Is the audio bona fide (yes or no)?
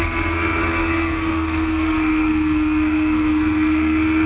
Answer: no